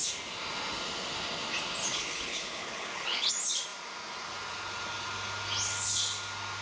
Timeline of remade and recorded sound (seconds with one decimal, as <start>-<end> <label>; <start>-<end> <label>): 0.0-1.8 recorded; 1.8-3.3 remade; 3.3-6.6 recorded